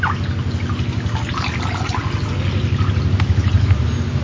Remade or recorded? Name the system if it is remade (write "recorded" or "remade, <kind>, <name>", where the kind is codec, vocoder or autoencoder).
recorded